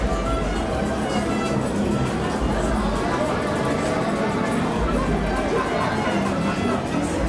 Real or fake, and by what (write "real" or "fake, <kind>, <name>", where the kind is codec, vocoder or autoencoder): real